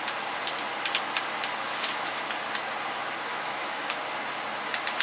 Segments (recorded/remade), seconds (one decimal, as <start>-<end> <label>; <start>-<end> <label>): 0.0-1.6 recorded; 1.6-2.3 remade; 2.3-3.3 recorded; 3.3-4.0 remade; 4.0-5.0 recorded